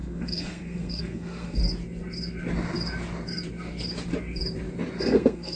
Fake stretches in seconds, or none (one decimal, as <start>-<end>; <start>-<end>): 0.0-1.6; 5.0-5.6